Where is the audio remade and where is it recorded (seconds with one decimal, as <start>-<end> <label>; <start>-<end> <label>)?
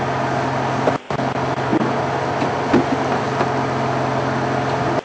0.0-5.0 recorded